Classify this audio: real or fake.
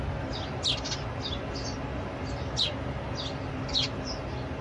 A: real